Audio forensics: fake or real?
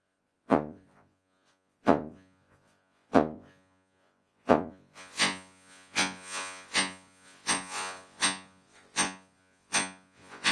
fake